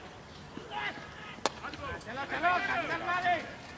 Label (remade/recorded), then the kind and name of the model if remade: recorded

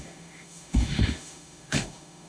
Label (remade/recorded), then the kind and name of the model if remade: remade, autoencoder, DAC-VAE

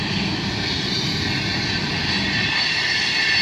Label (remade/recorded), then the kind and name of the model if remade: recorded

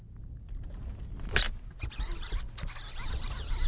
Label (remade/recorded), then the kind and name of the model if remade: recorded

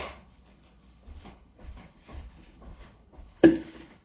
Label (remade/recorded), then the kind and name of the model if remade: remade, codec, HILCodec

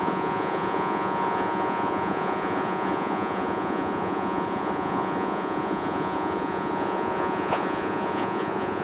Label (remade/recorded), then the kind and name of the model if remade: remade, vocoder, Vocos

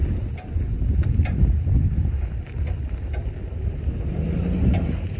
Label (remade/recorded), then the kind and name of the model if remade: recorded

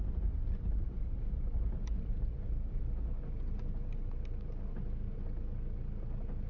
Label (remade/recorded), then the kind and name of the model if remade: recorded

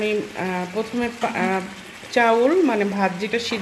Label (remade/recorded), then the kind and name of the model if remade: recorded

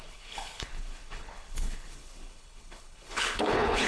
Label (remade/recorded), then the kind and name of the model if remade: remade, codec, HILCodec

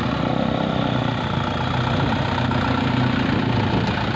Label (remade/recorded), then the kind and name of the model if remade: recorded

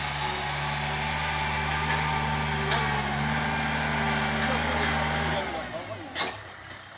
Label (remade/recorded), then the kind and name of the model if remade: recorded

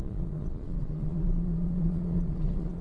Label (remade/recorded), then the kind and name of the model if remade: remade, vocoder, Vocos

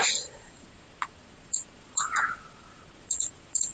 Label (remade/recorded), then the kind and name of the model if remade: remade, vocoder, Vocos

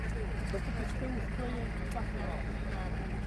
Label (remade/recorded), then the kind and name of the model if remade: recorded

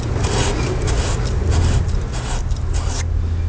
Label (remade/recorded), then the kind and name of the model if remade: recorded